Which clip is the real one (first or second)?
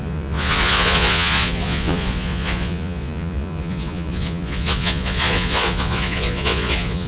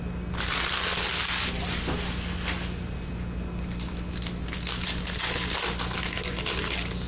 second